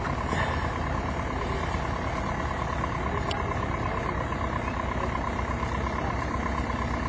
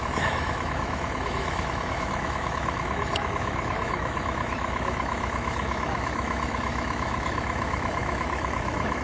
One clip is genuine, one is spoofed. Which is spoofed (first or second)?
second